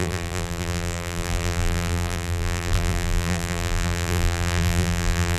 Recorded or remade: remade